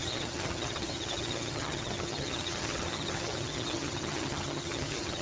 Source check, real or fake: fake